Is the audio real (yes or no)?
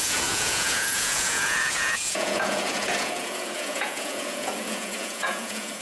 no